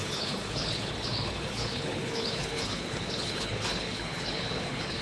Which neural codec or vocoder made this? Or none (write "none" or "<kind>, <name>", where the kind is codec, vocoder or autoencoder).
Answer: codec, HILCodec